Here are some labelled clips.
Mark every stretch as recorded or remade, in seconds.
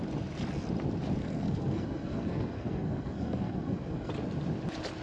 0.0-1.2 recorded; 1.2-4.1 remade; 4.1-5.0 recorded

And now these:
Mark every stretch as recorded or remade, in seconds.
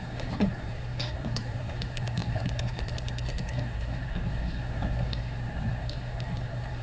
0.0-6.8 remade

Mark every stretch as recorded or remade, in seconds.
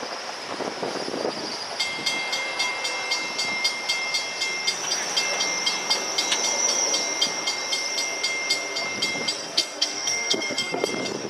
0.0-9.4 recorded; 9.4-10.9 remade; 10.9-11.3 recorded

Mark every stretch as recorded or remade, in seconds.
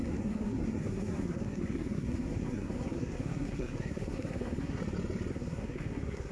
0.0-4.8 remade; 4.8-5.3 recorded; 5.3-6.3 remade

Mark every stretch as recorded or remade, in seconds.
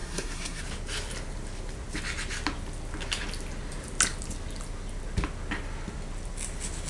0.0-0.6 remade; 0.6-6.9 recorded